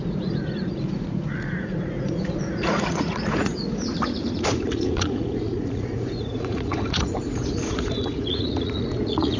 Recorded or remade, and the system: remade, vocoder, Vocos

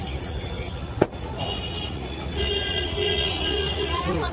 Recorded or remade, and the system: remade, vocoder, Vocos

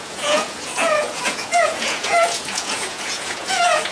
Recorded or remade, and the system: remade, vocoder, Vocos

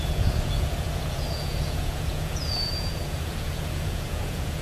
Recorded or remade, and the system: remade, vocoder, Vocos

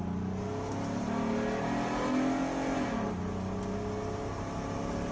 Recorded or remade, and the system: recorded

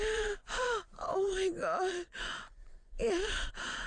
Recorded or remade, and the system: remade, vocoder, Vocos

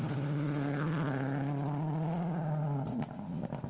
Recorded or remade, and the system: recorded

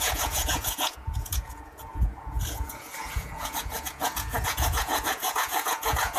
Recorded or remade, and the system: remade, vocoder, Vocos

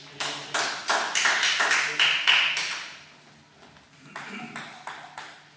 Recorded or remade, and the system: recorded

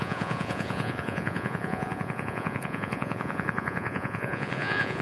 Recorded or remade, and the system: remade, vocoder, Vocos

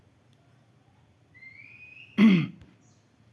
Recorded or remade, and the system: recorded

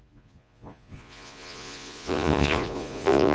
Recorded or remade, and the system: remade, vocoder, Vocos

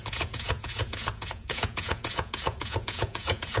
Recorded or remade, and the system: remade, vocoder, Vocos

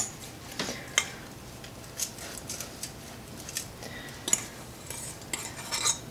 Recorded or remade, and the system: recorded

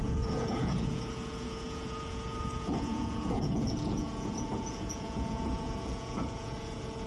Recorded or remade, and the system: remade, vocoder, Vocos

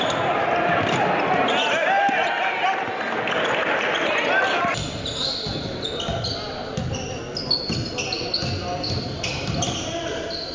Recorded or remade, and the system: recorded